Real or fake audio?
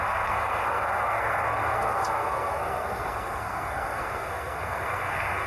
fake